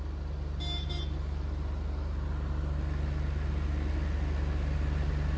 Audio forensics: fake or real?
real